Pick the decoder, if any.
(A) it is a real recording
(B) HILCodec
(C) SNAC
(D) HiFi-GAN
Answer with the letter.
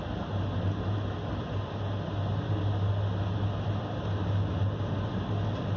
A